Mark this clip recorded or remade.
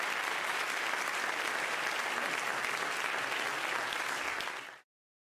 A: recorded